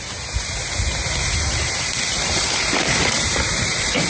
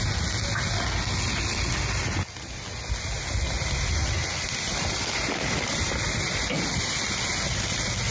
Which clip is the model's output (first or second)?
first